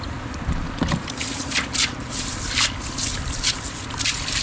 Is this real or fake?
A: real